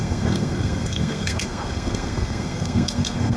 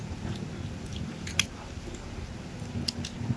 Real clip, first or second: second